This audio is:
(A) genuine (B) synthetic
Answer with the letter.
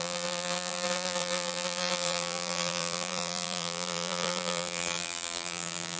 B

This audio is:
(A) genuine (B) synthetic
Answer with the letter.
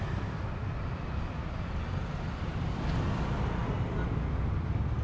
A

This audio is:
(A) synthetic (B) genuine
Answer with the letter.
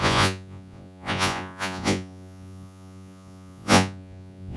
A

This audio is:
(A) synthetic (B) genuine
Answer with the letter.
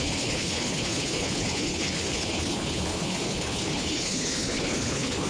A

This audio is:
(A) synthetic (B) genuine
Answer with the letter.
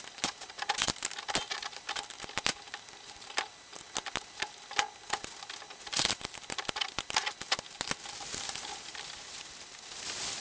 B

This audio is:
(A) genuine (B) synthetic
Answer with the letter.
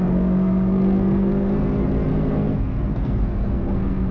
B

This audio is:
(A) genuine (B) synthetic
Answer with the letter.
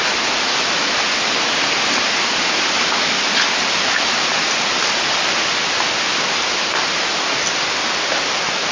A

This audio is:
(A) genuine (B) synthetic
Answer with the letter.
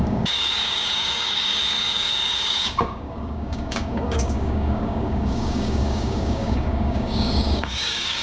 B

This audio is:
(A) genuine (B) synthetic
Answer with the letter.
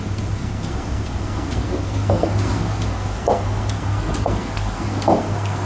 B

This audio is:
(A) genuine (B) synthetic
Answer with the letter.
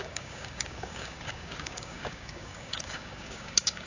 B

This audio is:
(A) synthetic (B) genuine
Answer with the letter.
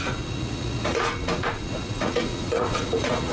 A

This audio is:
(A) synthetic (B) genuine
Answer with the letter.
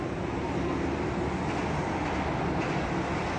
B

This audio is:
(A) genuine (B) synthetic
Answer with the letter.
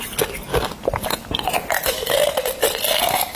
A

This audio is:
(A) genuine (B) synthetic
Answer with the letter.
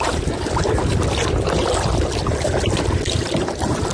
A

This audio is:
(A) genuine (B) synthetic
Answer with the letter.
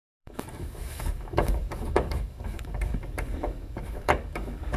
B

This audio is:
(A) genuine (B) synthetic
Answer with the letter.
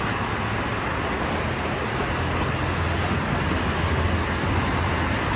A